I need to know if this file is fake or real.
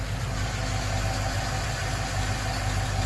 real